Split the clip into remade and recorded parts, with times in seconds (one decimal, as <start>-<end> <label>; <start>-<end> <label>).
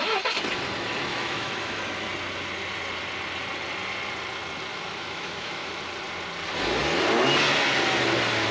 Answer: 0.0-1.1 recorded; 1.1-1.8 remade; 1.8-4.7 recorded; 4.7-5.8 remade; 5.8-8.5 recorded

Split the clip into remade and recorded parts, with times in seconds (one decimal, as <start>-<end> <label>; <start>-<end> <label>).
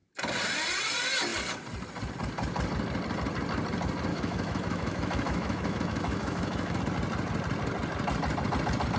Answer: 0.0-4.1 recorded; 4.1-6.8 remade; 6.8-9.0 recorded